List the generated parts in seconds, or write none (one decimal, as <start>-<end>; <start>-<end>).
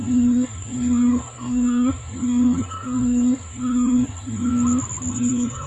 0.0-4.5; 5.1-5.7